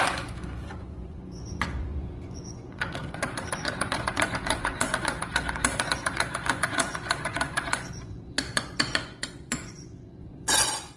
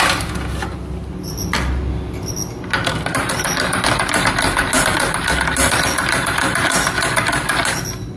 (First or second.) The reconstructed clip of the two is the first